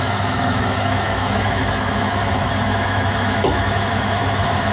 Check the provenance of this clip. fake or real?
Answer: fake